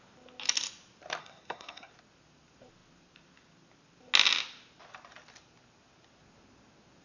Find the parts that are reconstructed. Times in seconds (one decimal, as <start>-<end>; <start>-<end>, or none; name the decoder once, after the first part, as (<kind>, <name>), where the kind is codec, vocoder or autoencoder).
1.2-1.9 (codec, SNAC)